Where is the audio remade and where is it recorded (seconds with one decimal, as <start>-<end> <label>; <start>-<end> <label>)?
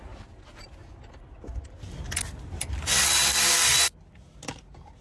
0.0-5.0 recorded